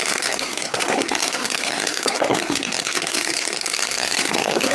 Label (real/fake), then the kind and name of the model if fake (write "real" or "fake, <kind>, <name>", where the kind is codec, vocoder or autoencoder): fake, codec, SNAC